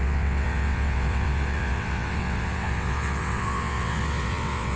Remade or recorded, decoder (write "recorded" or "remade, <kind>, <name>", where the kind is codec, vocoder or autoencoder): remade, vocoder, WaveNeXt